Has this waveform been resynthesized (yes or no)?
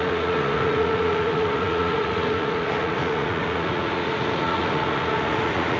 yes